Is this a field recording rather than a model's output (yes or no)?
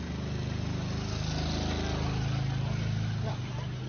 yes